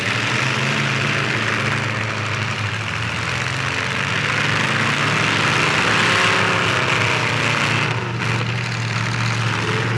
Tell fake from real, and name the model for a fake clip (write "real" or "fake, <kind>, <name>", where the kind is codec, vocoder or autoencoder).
real